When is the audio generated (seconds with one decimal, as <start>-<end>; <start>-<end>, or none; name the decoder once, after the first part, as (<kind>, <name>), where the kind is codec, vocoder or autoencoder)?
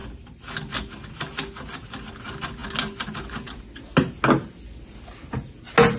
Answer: none